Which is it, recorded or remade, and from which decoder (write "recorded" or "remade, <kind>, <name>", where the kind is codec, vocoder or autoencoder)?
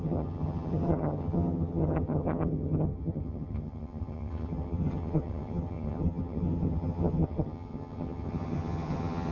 remade, vocoder, HiFi-GAN